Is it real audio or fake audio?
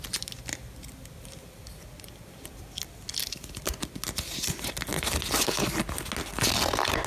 real